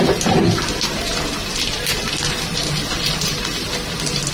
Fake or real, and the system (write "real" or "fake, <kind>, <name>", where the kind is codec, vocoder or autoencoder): real